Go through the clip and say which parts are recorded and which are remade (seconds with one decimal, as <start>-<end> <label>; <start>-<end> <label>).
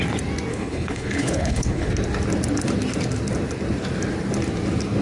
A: 0.0-0.5 recorded; 0.5-1.9 remade; 1.9-5.0 recorded